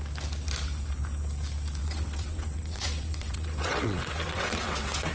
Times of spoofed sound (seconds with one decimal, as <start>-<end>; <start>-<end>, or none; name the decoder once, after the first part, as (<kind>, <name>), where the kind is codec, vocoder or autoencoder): 1.8-5.1 (vocoder, WaveNeXt)